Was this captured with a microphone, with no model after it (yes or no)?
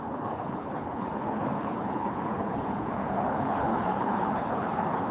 no